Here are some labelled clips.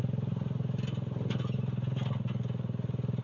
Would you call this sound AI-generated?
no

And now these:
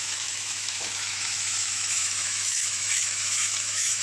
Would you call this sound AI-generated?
yes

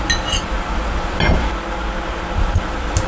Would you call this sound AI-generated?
no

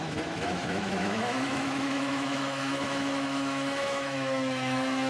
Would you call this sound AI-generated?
yes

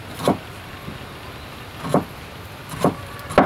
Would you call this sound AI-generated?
no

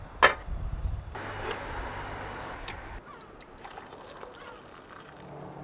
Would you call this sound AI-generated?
no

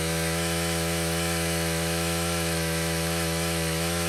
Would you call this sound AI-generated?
yes